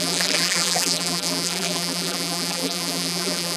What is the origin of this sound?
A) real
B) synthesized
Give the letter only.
B